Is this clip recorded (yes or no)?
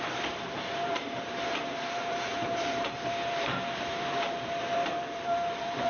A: no